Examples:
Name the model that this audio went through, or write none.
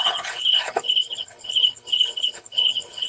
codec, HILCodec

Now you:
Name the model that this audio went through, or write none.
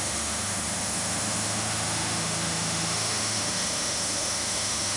autoencoder, DAC-VAE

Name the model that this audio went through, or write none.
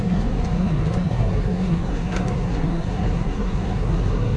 codec, SNAC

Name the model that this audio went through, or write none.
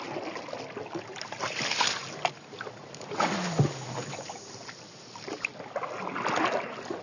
none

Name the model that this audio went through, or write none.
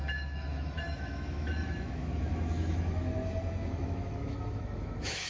autoencoder, DAC-VAE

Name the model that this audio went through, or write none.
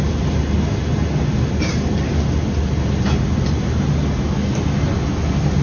none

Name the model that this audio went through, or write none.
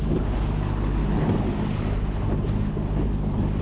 none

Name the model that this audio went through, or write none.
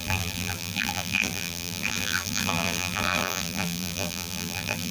vocoder, BigVGAN v2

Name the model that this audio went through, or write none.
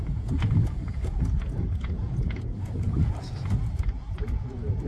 vocoder, Vocos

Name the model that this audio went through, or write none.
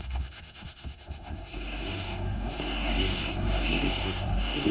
codec, SNAC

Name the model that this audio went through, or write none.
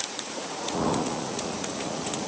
vocoder, Vocos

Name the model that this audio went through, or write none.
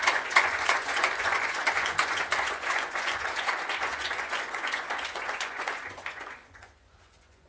vocoder, Vocos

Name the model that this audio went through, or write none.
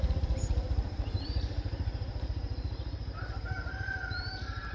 vocoder, BigVGAN v2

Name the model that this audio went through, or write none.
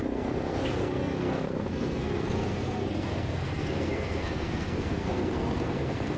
codec, SNAC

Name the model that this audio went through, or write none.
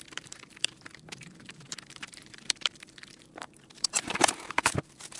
vocoder, BigVGAN v2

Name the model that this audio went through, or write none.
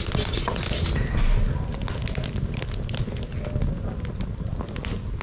none